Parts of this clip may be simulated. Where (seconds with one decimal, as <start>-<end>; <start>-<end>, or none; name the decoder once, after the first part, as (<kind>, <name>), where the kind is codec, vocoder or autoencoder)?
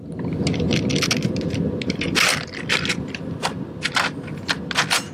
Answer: none